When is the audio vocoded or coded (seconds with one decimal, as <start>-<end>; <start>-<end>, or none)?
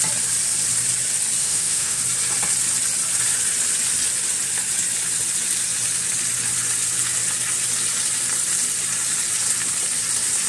1.4-2.0